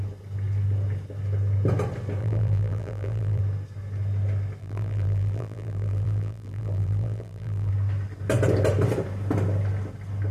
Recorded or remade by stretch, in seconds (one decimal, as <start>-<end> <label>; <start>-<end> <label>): 0.0-2.2 recorded; 2.2-3.4 remade; 3.4-4.6 recorded; 4.6-7.7 remade; 7.7-10.3 recorded